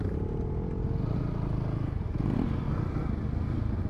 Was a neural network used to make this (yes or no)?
no